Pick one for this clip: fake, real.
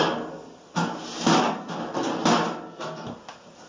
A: real